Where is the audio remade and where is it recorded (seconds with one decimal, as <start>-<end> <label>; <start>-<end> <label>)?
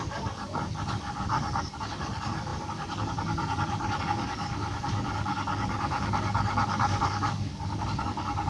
0.0-8.5 remade